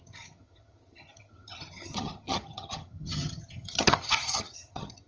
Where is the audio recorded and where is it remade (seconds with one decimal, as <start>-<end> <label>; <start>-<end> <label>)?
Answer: 0.0-5.1 remade